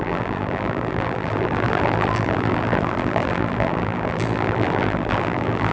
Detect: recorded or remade remade